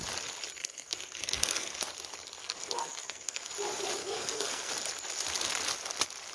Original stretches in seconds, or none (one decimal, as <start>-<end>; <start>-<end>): 0.0-0.6; 1.9-2.4; 3.5-4.0; 4.7-6.3